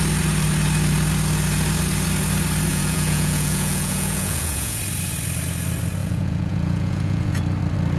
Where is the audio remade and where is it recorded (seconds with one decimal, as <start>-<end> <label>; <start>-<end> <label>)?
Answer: 0.0-2.7 recorded; 2.7-4.8 remade; 4.8-6.0 recorded; 6.0-7.4 remade; 7.4-8.0 recorded